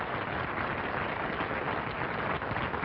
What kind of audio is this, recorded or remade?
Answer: recorded